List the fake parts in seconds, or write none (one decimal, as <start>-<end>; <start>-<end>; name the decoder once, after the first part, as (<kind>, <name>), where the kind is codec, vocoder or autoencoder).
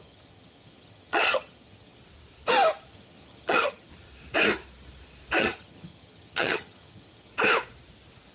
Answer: 0.0-2.0 (vocoder, HiFi-GAN); 2.9-3.9; 5.4-7.3